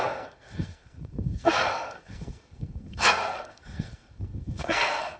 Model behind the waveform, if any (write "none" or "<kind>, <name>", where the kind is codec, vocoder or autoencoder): codec, SNAC